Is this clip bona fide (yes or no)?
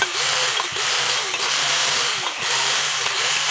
no